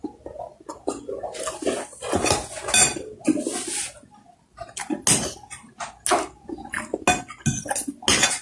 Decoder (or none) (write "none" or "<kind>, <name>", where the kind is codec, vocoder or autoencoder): none